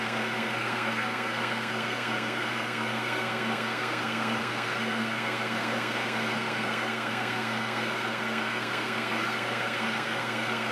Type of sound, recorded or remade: remade